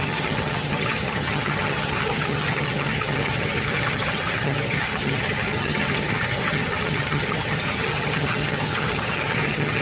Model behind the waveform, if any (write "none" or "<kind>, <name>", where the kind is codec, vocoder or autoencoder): vocoder, HiFi-GAN